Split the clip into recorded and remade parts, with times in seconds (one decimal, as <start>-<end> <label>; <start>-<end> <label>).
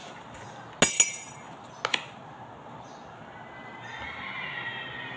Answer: 0.0-5.2 recorded